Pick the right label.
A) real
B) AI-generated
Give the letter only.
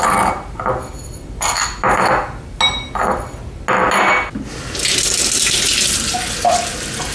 A